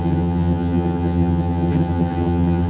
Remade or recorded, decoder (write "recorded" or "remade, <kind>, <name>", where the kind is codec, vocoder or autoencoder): remade, vocoder, HiFi-GAN